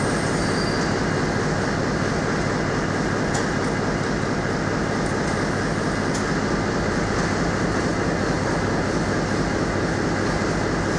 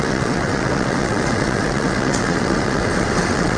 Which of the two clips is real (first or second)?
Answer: first